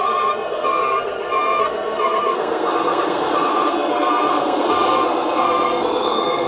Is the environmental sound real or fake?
fake